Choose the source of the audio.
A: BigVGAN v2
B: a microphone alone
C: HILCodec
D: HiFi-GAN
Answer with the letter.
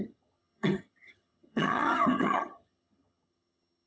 D